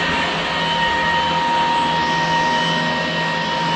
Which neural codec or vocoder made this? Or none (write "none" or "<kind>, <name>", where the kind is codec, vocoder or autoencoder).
none